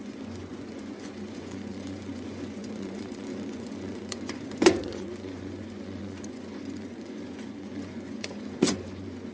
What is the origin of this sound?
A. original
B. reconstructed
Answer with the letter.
B